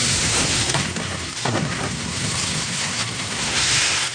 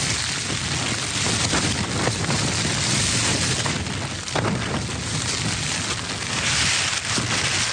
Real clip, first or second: second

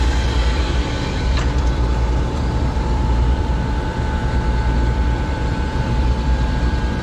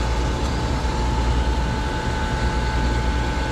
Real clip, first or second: second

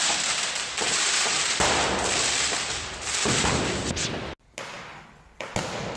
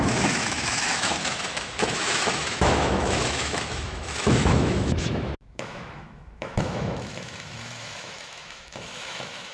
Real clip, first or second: first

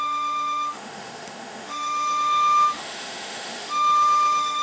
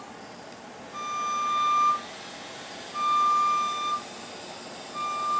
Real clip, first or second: second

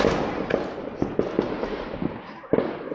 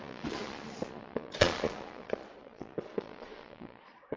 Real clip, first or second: first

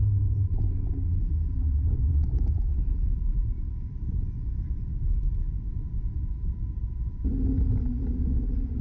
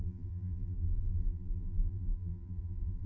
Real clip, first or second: first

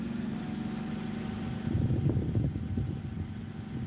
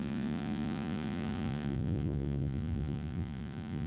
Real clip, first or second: first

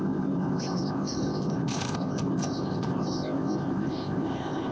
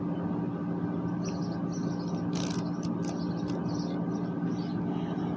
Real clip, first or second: second